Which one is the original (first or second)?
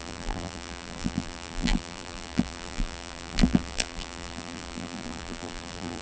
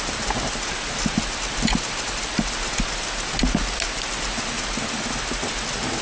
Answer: second